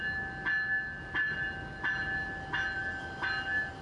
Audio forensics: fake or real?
real